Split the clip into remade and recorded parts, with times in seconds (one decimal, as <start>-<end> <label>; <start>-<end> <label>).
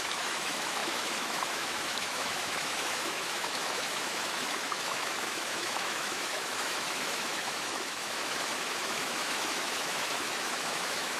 0.0-11.2 remade